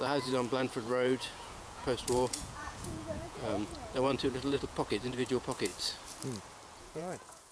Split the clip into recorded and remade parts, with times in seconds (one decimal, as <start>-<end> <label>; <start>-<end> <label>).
0.0-5.7 remade; 5.7-6.7 recorded; 6.7-7.5 remade